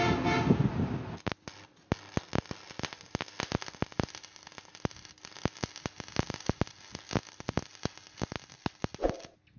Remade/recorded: recorded